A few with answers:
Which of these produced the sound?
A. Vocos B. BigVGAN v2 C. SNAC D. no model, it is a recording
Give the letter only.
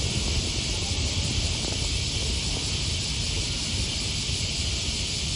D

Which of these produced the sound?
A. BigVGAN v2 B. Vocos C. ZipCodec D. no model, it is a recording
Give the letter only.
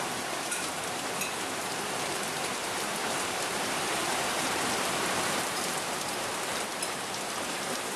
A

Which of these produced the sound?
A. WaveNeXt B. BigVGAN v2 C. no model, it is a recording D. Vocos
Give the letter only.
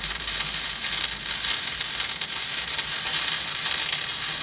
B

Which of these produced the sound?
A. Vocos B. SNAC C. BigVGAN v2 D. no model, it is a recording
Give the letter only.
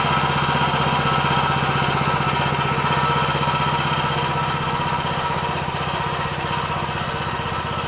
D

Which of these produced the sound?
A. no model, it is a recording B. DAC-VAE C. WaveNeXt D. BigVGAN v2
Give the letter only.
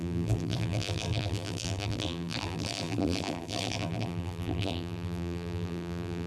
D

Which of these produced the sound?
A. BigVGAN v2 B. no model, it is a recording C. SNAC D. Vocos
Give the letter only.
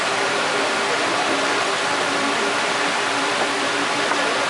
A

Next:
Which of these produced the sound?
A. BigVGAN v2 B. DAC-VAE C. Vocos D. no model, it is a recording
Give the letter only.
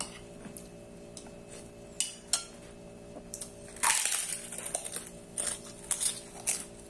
D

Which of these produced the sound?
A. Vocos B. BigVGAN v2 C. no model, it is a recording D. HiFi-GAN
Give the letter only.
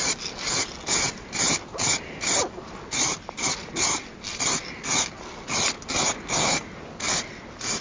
C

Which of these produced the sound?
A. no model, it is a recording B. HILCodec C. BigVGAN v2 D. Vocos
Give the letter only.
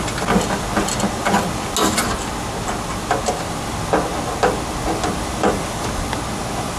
A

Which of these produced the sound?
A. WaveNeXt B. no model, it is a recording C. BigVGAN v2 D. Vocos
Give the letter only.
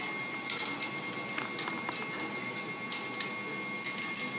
B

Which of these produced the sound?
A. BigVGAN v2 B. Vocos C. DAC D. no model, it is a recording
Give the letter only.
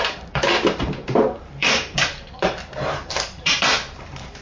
A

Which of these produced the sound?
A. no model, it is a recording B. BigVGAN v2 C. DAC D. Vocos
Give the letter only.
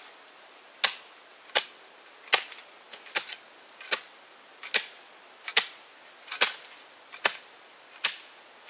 A